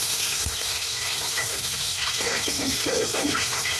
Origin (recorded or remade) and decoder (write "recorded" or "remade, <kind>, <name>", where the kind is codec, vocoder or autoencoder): remade, codec, SNAC